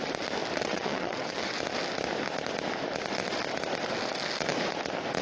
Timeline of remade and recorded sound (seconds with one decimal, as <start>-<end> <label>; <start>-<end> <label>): 0.0-0.6 recorded; 0.6-1.6 remade; 1.6-5.2 recorded